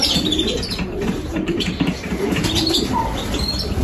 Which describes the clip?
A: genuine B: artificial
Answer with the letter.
B